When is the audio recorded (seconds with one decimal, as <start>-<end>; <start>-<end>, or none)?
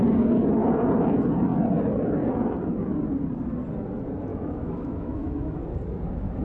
0.0-4.3; 5.6-6.4